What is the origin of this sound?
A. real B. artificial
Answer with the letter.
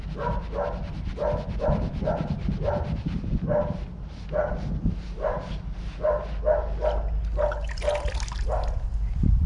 A